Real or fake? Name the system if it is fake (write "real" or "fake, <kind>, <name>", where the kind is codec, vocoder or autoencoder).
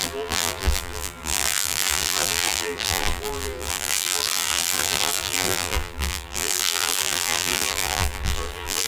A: fake, vocoder, BigVGAN v2